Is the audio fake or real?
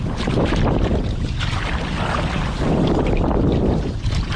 real